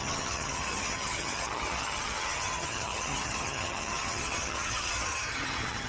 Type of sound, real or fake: fake